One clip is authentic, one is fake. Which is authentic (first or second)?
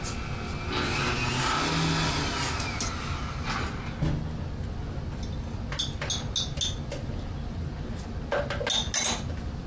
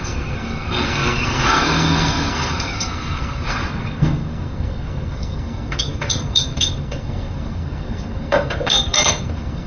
first